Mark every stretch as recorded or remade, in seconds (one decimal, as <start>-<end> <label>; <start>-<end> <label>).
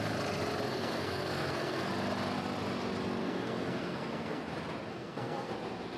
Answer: 0.0-0.7 recorded; 0.7-1.9 remade; 1.9-3.2 recorded; 3.2-4.4 remade; 4.4-4.9 recorded; 4.9-5.5 remade; 5.5-6.0 recorded